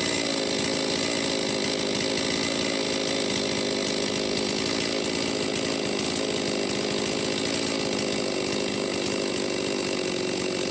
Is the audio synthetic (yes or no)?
no